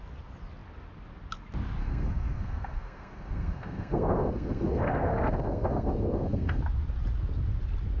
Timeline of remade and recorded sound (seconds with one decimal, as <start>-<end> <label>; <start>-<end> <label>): 0.0-1.8 recorded; 1.8-6.6 remade; 6.6-8.0 recorded